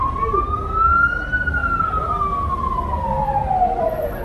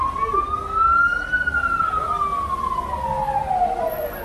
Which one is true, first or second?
second